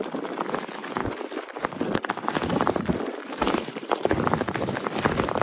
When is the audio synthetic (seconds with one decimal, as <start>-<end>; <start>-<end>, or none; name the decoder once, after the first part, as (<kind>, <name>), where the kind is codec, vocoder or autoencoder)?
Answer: none